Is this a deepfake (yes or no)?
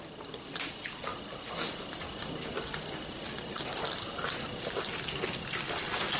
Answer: no